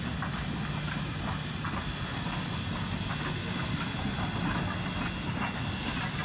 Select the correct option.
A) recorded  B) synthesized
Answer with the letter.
A